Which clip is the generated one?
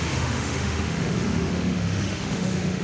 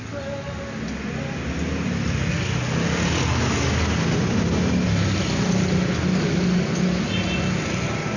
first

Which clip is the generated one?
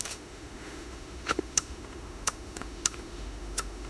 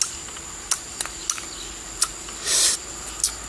first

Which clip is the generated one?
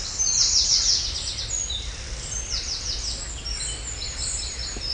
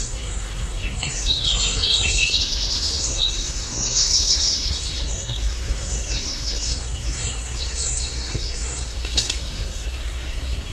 second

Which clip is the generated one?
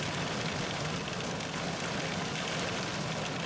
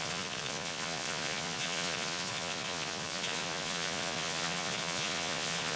second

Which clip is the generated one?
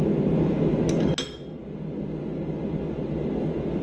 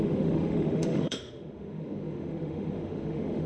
second